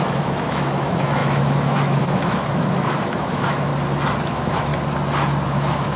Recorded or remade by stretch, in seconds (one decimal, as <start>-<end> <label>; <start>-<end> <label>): 0.0-3.7 remade; 3.7-4.2 recorded; 4.2-4.7 remade; 4.7-5.5 recorded; 5.5-6.0 remade

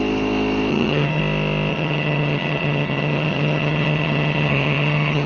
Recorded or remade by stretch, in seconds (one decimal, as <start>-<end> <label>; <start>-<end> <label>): 0.0-0.7 recorded; 0.7-1.2 remade; 1.2-1.7 recorded; 1.7-5.3 remade

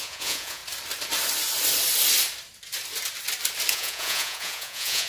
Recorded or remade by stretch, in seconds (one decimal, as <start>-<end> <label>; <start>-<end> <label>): 0.0-0.6 remade; 0.6-3.7 recorded; 3.7-5.1 remade

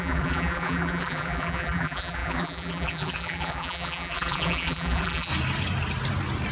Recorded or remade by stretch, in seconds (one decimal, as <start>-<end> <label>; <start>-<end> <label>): 0.0-5.3 remade; 5.3-6.5 recorded